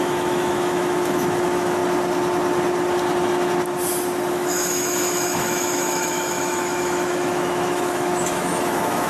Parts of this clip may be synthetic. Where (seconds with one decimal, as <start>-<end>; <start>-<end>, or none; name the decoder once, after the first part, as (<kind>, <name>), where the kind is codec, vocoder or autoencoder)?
0.0-1.8 (autoencoder, DAC-VAE); 4.3-9.1